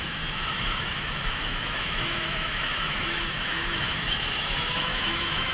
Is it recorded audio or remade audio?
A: remade